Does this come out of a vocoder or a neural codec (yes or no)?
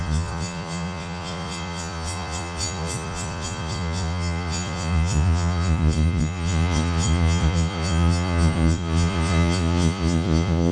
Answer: yes